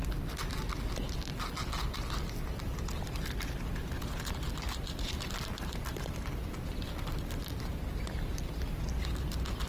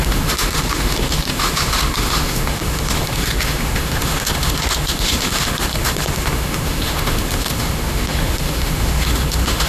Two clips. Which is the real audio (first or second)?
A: first